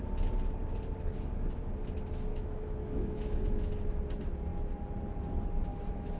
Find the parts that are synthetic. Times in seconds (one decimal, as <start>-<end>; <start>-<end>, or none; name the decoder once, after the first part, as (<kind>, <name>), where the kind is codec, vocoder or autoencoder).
2.3-3.7 (autoencoder, DAC-VAE); 5.7-6.2